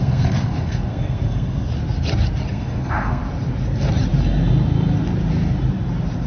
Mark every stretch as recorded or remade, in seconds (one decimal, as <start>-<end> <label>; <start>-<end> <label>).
0.0-1.7 remade; 1.7-2.5 recorded; 2.5-3.2 remade; 3.2-6.3 recorded